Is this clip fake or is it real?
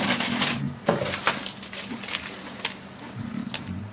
real